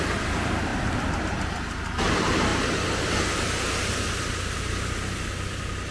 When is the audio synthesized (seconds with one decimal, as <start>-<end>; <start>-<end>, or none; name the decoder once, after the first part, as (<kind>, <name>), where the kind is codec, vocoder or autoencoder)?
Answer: none

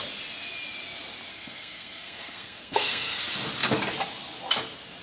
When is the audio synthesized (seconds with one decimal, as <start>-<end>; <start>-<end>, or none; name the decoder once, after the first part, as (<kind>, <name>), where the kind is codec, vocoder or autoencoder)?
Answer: 1.3-3.2 (codec, SNAC)

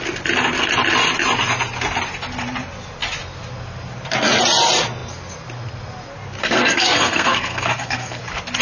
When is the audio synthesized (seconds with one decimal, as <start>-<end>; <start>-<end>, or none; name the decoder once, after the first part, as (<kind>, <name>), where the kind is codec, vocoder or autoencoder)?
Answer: 6.4-8.2 (codec, SNAC)

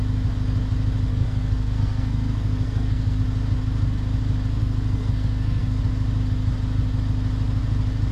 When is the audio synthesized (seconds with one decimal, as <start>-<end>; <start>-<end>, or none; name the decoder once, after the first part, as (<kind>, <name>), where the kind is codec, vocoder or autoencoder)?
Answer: 1.1-3.2 (codec, SNAC); 4.6-5.8

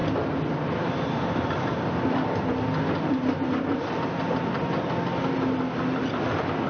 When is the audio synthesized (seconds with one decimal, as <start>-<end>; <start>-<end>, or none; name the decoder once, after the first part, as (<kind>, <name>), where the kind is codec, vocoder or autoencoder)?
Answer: none